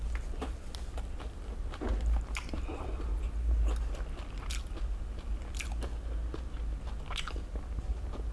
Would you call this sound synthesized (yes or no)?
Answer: no